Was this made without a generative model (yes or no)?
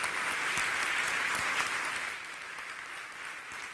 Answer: yes